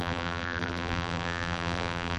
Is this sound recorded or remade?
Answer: remade